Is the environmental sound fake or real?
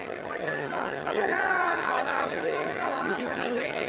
fake